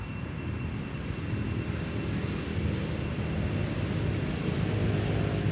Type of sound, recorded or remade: recorded